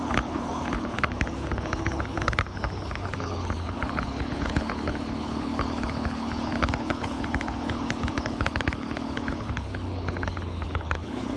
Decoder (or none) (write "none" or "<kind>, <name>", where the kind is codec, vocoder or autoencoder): codec, HILCodec